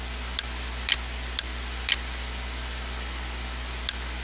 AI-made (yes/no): no